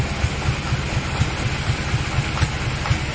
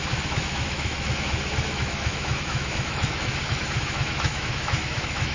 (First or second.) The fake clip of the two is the second